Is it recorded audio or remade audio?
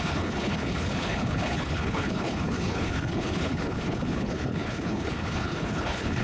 remade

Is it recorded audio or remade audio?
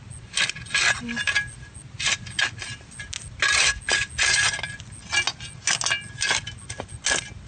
recorded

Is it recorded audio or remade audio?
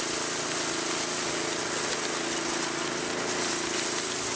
recorded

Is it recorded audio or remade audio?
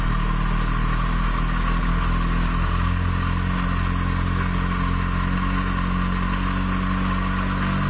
recorded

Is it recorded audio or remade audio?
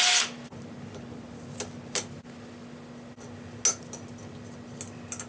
recorded